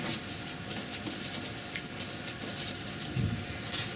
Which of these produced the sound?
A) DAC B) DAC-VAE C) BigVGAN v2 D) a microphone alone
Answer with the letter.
D